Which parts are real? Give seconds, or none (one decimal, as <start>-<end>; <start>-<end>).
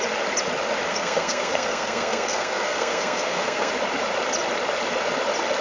0.0-0.9; 3.7-5.6